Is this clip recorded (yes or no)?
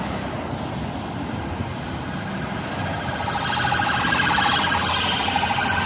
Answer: yes